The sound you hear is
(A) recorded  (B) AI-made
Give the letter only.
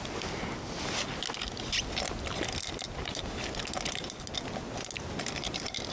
A